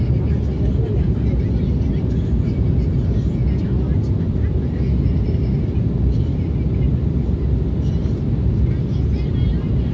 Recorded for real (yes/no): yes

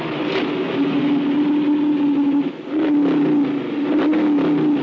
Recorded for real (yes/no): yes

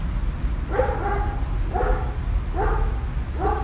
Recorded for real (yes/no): yes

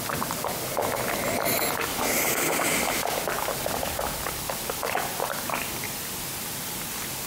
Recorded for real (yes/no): yes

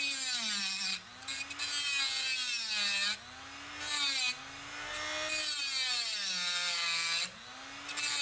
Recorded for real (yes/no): yes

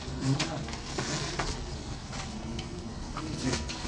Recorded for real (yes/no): no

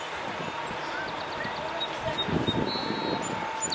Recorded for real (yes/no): yes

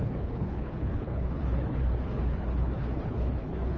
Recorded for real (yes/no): no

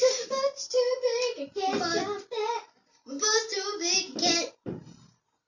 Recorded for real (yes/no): yes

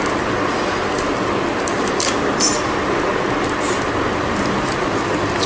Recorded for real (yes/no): yes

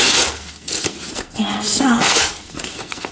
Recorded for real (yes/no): no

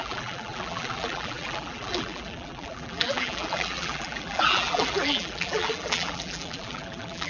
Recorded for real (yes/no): no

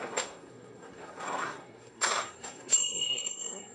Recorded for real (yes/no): no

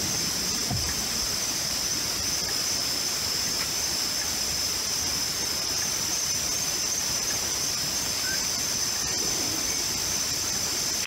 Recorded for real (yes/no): yes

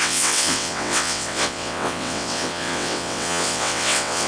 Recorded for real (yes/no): no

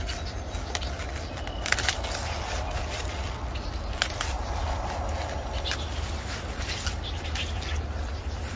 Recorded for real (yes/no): yes